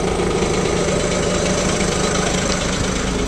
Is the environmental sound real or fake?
real